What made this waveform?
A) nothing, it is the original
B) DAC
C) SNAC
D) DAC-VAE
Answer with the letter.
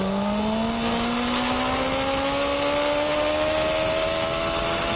A